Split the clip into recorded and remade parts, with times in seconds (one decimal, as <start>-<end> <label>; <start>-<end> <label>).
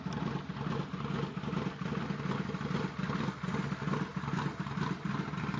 0.0-4.1 recorded; 4.1-5.1 remade; 5.1-5.6 recorded